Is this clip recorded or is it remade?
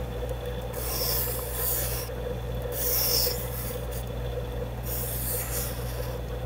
recorded